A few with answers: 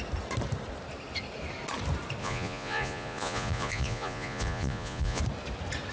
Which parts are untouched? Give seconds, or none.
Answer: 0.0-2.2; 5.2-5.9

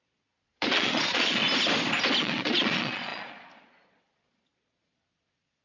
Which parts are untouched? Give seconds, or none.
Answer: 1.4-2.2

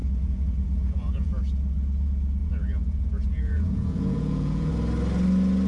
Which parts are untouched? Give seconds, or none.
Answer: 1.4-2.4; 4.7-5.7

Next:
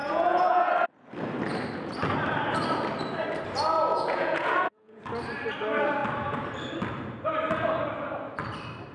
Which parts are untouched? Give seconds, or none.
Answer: 0.7-3.9; 5.0-8.9

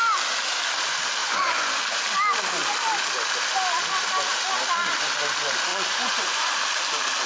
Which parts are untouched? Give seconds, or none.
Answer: 0.0-1.2; 1.8-5.7; 6.5-7.3

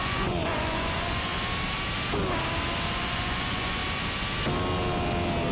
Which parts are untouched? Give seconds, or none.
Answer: 1.3-2.9; 3.8-5.5

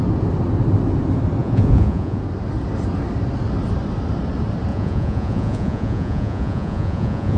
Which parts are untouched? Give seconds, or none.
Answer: 0.0-1.4; 2.2-4.7